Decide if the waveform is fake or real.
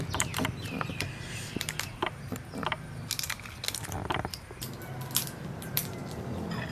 real